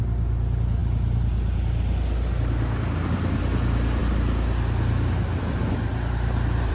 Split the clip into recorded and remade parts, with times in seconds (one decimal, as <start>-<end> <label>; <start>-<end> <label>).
0.0-6.7 recorded